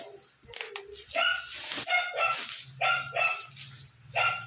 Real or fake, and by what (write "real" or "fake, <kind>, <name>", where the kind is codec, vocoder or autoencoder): real